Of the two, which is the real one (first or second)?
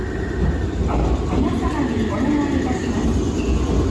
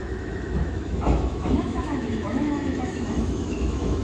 first